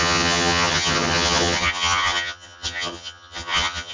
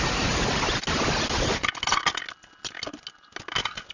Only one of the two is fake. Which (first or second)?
first